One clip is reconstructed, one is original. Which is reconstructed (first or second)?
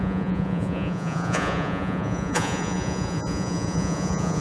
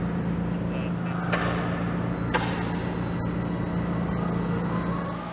first